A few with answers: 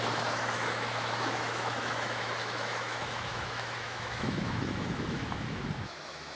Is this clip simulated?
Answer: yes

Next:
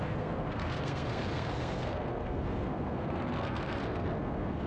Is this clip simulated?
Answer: yes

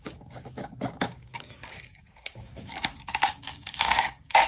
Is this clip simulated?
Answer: yes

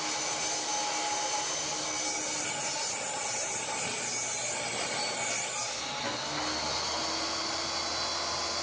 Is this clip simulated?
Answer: no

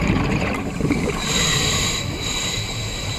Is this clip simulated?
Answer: yes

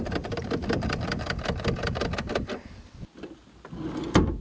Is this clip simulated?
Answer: no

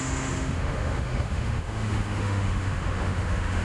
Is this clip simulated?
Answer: yes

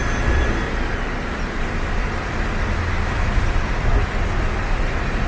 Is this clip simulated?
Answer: no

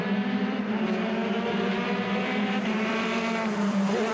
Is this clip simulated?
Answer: yes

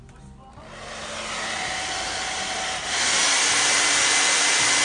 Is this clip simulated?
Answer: no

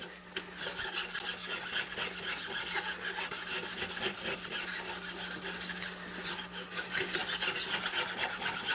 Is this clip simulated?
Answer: no